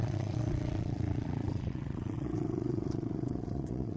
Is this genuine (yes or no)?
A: no